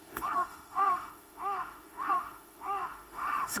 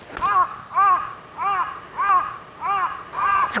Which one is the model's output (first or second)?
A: first